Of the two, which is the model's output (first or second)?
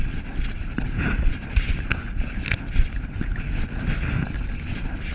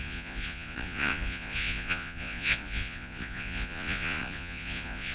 second